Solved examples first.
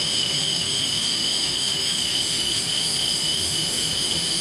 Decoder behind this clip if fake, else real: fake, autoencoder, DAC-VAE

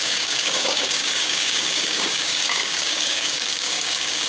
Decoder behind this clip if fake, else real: fake, codec, DAC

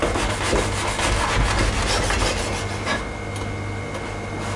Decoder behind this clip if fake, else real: real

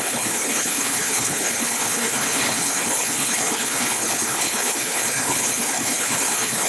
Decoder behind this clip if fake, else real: fake, codec, HILCodec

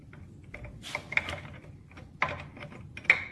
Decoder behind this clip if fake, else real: real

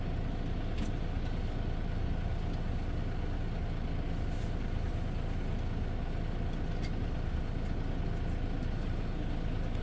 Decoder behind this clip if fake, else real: real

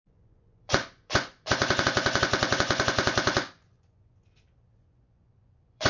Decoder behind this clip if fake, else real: fake, vocoder, Vocos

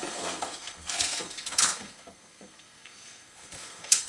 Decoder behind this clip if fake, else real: fake, codec, SNAC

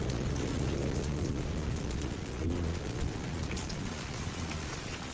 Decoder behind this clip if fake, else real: fake, vocoder, Vocos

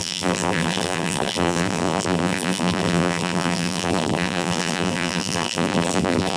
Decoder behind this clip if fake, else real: fake, vocoder, BigVGAN v2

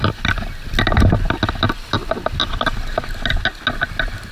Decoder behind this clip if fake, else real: real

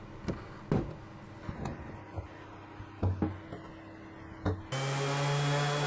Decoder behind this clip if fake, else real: real